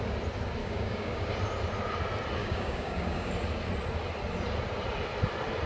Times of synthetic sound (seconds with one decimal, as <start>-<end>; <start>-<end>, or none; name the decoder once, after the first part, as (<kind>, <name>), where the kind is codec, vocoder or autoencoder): 0.6-1.3 (codec, DAC); 2.4-3.3